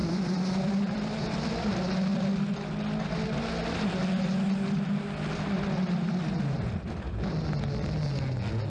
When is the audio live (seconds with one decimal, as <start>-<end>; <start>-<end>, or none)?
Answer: 1.7-8.7